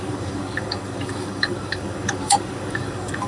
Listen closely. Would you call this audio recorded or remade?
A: remade